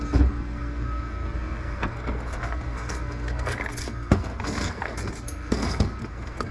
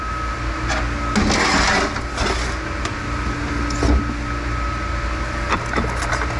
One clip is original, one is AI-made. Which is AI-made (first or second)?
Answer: first